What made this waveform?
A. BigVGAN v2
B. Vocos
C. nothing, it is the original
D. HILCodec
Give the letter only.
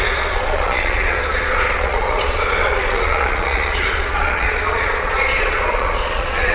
B